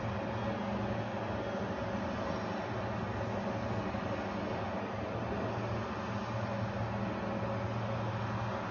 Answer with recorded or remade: recorded